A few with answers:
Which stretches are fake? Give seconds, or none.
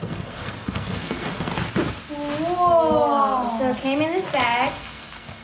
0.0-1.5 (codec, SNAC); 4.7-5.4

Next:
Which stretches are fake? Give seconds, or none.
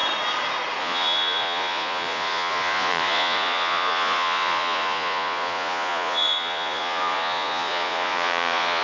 0.8-8.8 (vocoder, Vocos)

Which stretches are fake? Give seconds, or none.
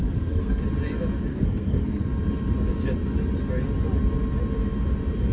0.0-0.6 (codec, SNAC); 1.3-2.0